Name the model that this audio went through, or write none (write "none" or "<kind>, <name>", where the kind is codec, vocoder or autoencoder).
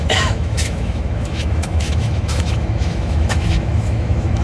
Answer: autoencoder, DAC-VAE